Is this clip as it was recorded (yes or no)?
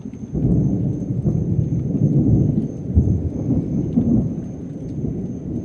yes